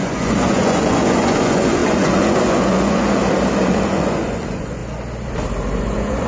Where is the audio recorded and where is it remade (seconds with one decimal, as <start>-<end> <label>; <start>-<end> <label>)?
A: 0.0-3.2 remade; 3.2-3.7 recorded; 3.7-4.8 remade; 4.8-5.8 recorded; 5.8-6.3 remade